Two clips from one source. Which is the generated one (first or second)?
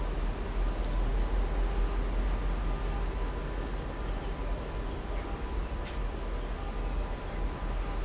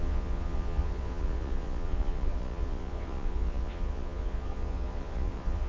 second